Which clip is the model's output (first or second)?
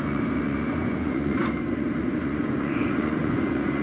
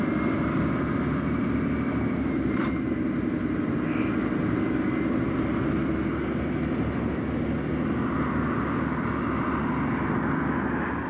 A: first